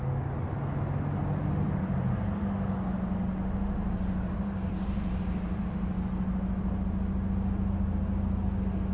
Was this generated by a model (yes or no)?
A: no